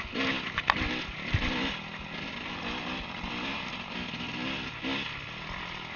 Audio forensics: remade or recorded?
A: recorded